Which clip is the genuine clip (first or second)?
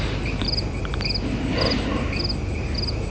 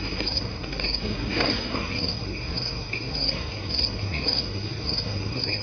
first